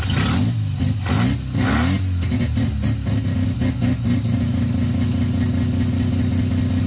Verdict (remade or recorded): recorded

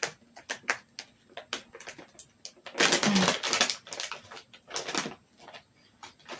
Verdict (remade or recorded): recorded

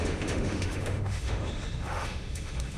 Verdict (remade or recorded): remade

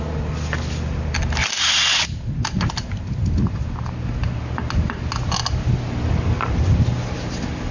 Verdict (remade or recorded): recorded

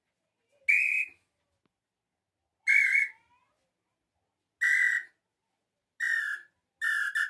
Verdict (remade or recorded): recorded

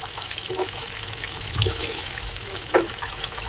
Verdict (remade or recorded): remade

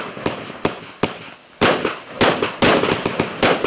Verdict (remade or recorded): recorded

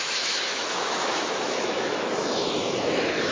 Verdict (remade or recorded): remade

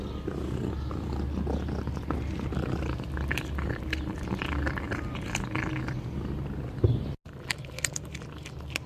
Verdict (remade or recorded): recorded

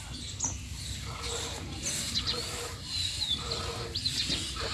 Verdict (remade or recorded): recorded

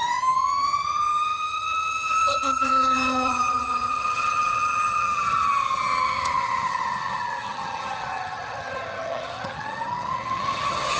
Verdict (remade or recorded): remade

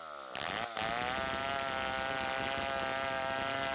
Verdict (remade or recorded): recorded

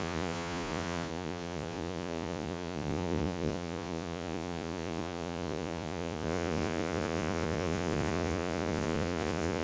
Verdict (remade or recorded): remade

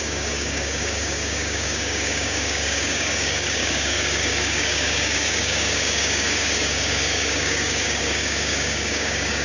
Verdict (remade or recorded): remade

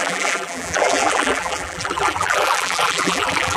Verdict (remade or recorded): remade